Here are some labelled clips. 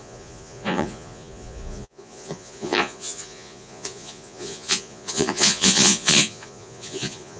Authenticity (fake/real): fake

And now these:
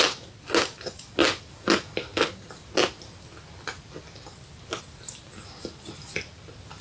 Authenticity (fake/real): real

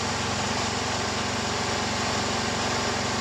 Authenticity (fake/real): real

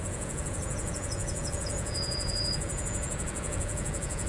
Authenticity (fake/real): fake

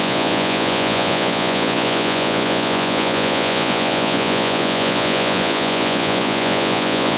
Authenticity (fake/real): fake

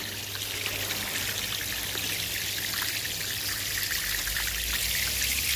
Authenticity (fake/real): real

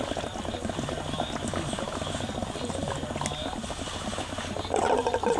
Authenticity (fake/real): real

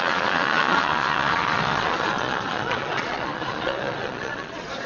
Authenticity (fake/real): fake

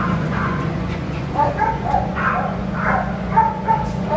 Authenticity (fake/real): fake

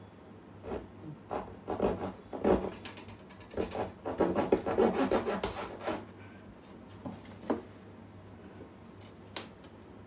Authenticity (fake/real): real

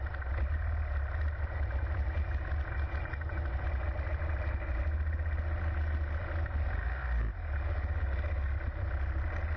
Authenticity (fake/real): real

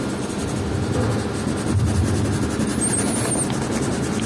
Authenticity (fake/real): real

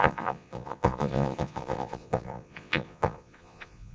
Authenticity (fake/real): fake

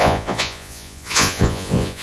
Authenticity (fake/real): fake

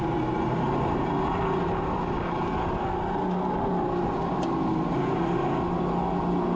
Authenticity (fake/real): real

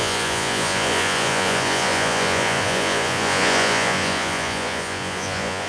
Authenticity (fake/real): fake